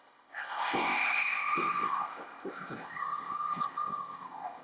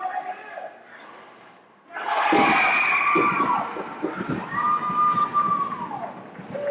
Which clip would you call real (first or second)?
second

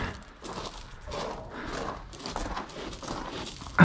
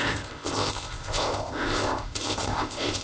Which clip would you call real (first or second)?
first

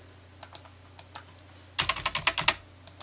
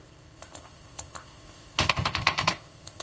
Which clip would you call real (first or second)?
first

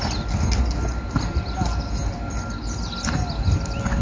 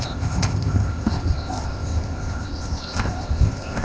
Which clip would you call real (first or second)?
first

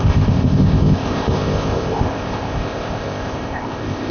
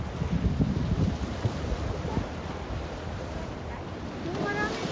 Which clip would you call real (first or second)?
second